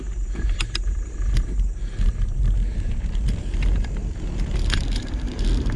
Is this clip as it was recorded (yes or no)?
no